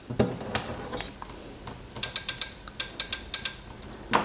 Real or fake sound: real